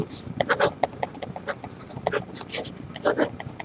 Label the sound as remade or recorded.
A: recorded